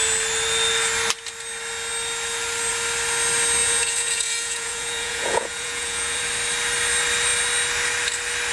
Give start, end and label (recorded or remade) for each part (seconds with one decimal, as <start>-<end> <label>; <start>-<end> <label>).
0.0-3.6 recorded; 3.6-6.2 remade; 6.2-8.5 recorded